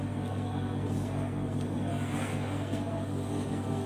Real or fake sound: fake